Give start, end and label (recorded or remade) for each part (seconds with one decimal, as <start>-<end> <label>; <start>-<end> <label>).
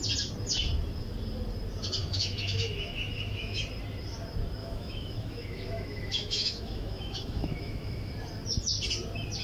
0.0-2.0 recorded; 2.0-3.6 remade; 3.6-4.6 recorded; 4.6-8.1 remade; 8.1-9.4 recorded